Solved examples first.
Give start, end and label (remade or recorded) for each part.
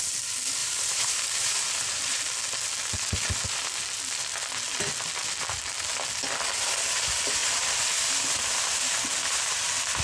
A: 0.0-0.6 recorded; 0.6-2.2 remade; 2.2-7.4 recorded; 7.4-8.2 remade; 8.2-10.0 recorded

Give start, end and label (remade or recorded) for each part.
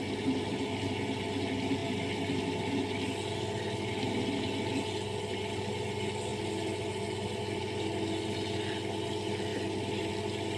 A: 0.0-10.6 recorded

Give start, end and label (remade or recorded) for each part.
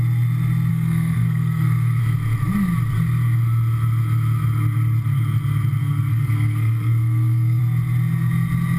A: 0.0-0.7 recorded; 0.7-2.0 remade; 2.0-5.8 recorded; 5.8-7.6 remade; 7.6-8.8 recorded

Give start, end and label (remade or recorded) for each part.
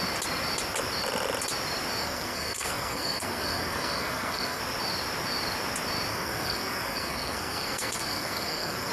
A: 0.0-2.0 recorded; 2.0-4.6 remade; 4.6-6.1 recorded; 6.1-8.9 remade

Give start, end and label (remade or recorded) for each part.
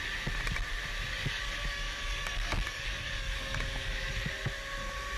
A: 0.0-1.1 recorded; 1.1-4.1 remade; 4.1-5.2 recorded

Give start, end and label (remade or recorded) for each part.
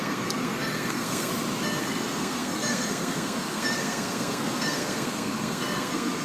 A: 0.0-1.3 remade; 1.3-1.8 recorded; 1.8-6.2 remade